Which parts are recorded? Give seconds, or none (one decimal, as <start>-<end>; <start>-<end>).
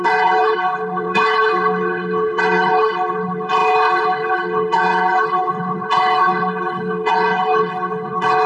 none